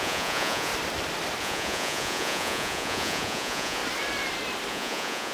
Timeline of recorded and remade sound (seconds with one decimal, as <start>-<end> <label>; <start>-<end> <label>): 0.0-0.7 remade; 0.7-1.4 recorded; 1.4-3.8 remade; 3.8-4.7 recorded; 4.7-5.3 remade